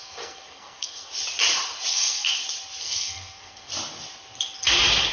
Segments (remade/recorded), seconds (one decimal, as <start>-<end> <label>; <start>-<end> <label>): 0.0-1.1 remade; 1.1-1.9 recorded; 1.9-2.3 remade; 2.3-2.8 recorded; 2.8-3.7 remade; 3.7-5.1 recorded